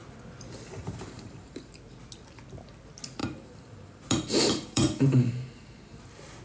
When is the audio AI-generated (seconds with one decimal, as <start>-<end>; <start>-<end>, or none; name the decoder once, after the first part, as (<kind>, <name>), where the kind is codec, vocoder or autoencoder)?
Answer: 0.8-1.7 (vocoder, BigVGAN v2); 3.2-5.3